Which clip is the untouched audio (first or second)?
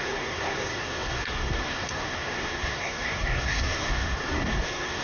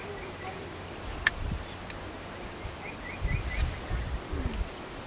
second